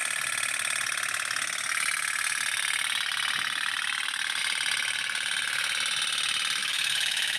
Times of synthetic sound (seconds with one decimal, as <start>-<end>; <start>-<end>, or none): 6.6-7.4